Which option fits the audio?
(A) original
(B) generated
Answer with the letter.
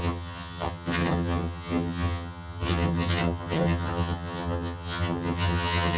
B